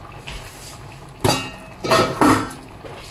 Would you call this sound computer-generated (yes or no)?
no